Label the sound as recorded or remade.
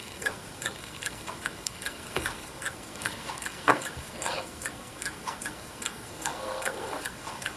remade